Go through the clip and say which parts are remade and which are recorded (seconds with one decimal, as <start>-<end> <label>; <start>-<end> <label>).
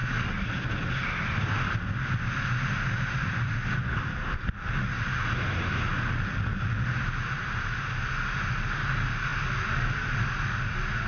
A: 0.0-11.1 recorded